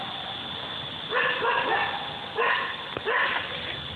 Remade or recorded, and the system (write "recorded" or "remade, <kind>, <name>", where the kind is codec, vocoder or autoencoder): recorded